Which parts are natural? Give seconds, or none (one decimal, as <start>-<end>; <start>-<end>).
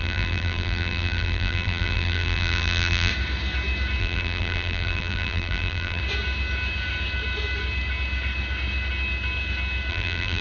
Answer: 3.1-4.0; 6.0-9.9